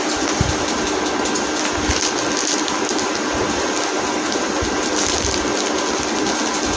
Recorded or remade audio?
recorded